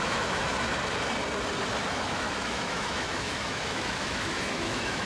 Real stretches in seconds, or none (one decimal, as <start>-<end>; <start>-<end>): 0.5-1.9